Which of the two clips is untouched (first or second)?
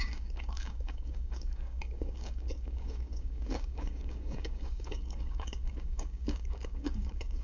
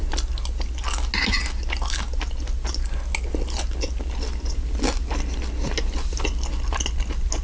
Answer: second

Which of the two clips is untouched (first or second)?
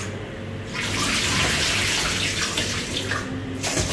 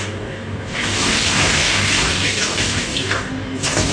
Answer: first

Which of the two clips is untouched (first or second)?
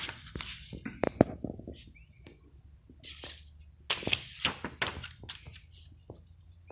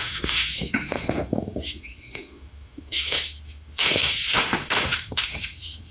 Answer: first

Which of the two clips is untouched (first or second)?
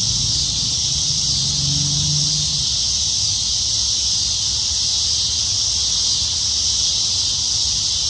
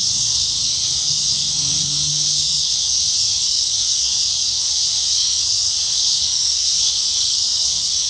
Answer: first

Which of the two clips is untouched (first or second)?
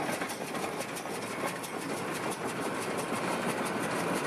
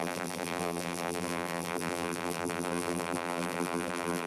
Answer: first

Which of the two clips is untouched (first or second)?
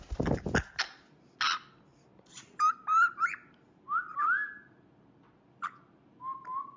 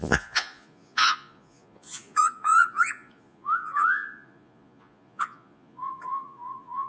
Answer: first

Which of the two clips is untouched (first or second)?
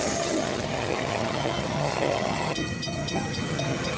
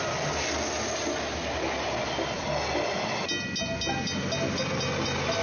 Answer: second